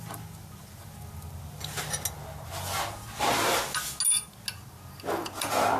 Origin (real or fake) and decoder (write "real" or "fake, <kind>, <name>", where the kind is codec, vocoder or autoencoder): real